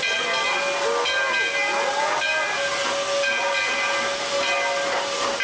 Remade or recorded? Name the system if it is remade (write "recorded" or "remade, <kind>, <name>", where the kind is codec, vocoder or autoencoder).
recorded